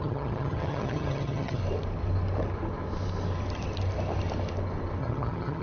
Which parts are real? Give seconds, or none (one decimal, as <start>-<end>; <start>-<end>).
1.6-5.0